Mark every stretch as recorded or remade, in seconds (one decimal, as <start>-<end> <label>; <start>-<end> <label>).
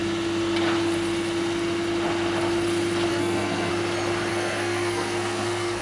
0.0-3.1 recorded; 3.1-3.7 remade; 3.7-4.3 recorded; 4.3-5.8 remade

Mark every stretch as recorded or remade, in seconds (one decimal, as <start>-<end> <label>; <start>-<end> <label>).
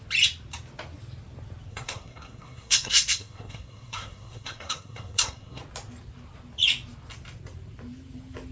0.0-1.7 recorded; 1.7-5.6 remade; 5.6-8.5 recorded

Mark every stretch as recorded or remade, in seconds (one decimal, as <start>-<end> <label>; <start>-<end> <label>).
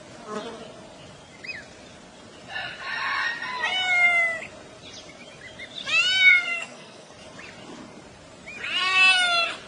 0.0-6.3 recorded; 6.3-7.1 remade; 7.1-9.7 recorded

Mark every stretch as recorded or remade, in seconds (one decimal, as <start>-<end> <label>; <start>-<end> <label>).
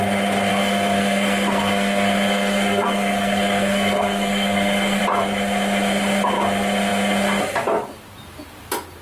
0.0-0.5 recorded; 0.5-5.0 remade; 5.0-9.0 recorded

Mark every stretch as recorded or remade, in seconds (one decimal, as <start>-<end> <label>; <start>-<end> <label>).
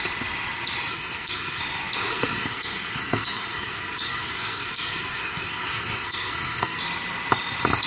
0.0-0.9 recorded; 0.9-1.6 remade; 1.6-2.1 recorded; 2.1-6.8 remade; 6.8-7.9 recorded